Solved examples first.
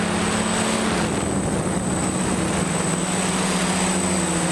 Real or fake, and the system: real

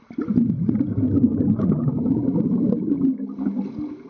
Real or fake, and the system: real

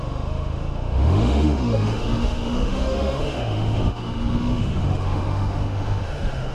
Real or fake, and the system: fake, autoencoder, DAC-VAE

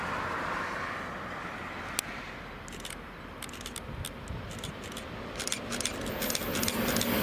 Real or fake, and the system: real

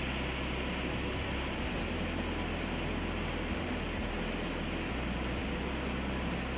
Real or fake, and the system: real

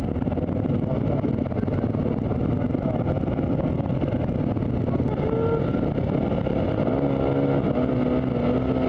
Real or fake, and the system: real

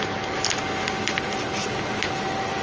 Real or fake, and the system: real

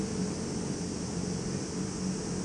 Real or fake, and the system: real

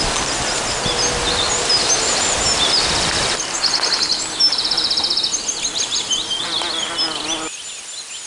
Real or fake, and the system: real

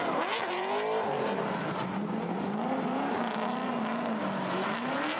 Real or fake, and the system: real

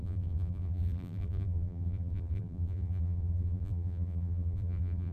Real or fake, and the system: fake, vocoder, BigVGAN v2